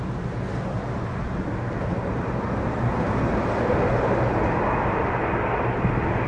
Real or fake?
real